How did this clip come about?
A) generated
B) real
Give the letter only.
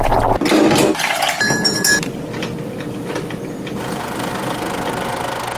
B